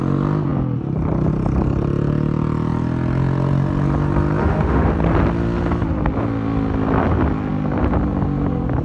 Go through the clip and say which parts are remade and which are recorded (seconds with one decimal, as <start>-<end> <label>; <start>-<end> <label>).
0.0-4.4 recorded; 4.4-4.9 remade; 4.9-8.8 recorded